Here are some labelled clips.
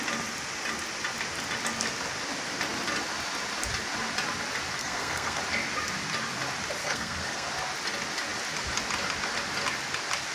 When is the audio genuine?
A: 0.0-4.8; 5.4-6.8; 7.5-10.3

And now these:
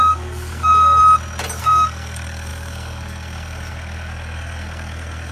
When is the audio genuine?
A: 1.0-1.6

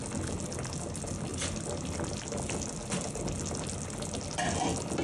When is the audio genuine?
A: 0.0-5.0

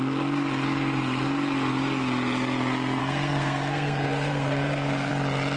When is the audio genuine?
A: 0.0-3.0; 5.1-5.6

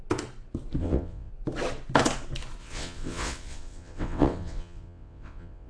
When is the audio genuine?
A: 0.0-0.8; 1.3-2.6

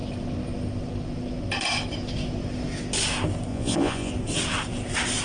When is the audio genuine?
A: 0.0-3.5; 4.1-5.2